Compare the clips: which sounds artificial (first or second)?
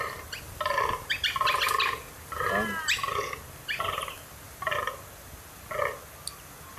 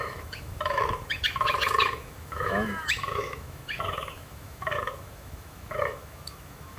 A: second